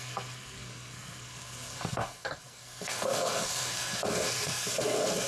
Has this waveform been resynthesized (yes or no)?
yes